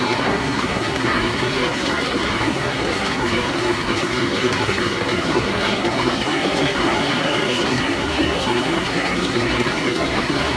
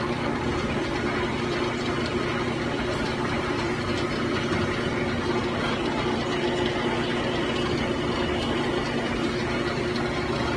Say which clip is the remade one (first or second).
first